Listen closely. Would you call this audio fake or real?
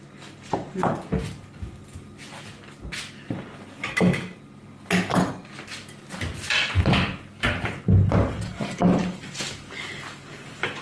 real